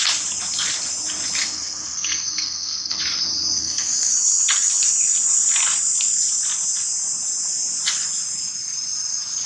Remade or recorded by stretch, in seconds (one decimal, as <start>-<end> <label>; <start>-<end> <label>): 0.0-1.4 recorded; 1.4-3.0 remade; 3.0-3.6 recorded; 3.6-4.1 remade; 4.1-9.5 recorded